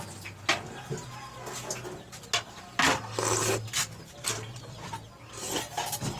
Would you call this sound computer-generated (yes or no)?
no